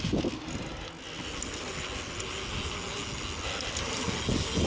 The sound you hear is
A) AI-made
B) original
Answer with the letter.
B